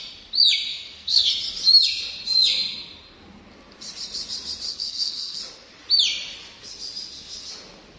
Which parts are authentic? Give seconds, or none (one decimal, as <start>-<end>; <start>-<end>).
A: 0.0-0.7; 1.3-4.7; 5.4-8.0